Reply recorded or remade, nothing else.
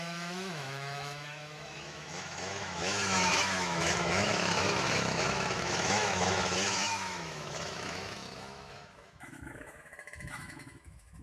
remade